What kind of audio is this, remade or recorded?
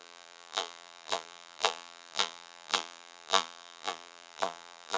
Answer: remade